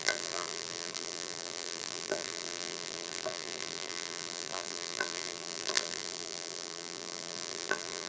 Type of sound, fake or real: fake